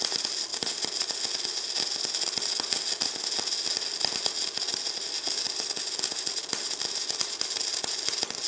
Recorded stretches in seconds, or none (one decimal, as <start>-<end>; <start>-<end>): 0.0-8.5